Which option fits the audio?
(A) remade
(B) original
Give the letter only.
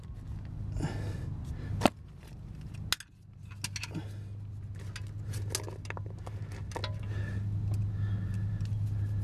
B